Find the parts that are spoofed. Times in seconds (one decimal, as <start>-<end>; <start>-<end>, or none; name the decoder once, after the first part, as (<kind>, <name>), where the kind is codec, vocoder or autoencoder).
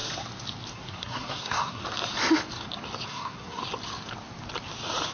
0.7-1.8 (codec, SNAC); 3.1-3.6